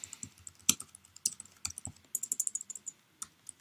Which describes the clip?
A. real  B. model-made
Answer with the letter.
A